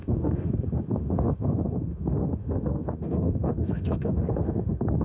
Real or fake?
fake